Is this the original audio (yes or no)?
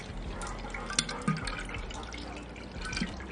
yes